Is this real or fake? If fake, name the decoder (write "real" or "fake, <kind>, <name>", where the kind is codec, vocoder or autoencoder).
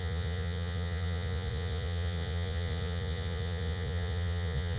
fake, vocoder, Vocos